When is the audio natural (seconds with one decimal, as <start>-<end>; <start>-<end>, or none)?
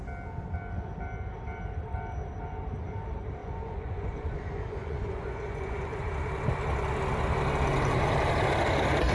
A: 0.0-3.4; 6.0-9.1